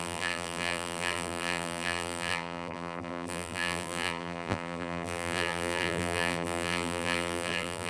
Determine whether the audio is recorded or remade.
remade